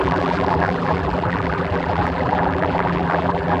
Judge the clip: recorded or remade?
remade